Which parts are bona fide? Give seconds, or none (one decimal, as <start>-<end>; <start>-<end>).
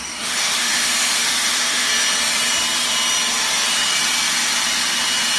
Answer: 1.9-5.4